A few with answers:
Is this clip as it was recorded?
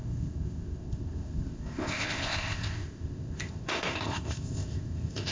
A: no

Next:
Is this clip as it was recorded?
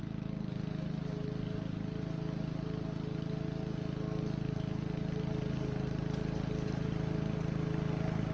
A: yes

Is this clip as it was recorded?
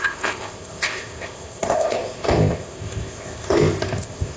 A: no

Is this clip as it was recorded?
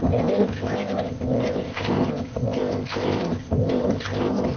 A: no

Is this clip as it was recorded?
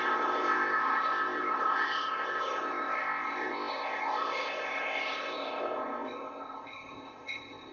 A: no